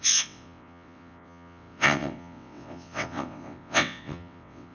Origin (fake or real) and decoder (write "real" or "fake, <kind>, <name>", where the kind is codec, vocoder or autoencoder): fake, vocoder, WaveNeXt